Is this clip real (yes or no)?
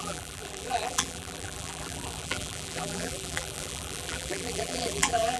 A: no